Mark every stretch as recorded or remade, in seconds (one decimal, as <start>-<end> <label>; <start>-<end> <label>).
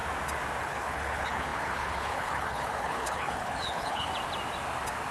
0.0-0.6 recorded; 0.6-4.1 remade; 4.1-5.1 recorded